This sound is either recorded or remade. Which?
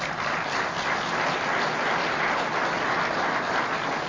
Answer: recorded